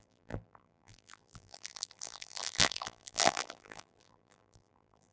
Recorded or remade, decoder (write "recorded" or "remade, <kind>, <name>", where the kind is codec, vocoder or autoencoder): remade, vocoder, BigVGAN v2